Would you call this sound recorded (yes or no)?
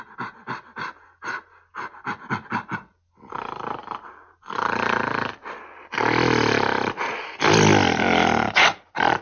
yes